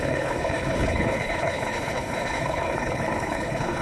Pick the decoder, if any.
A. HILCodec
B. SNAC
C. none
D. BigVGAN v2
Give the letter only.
A